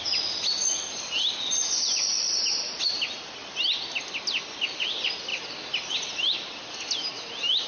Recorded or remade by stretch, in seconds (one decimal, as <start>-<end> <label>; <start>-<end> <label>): 0.0-7.7 recorded